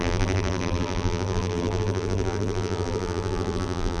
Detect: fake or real fake